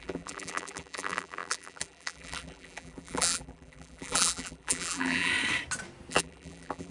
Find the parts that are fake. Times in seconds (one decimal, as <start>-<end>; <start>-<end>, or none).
0.0-5.3; 6.1-6.9